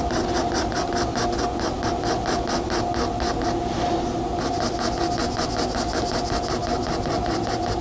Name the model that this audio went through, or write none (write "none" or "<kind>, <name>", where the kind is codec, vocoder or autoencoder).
none